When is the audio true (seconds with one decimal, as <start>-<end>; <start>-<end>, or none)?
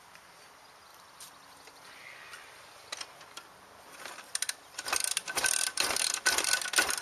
0.0-7.0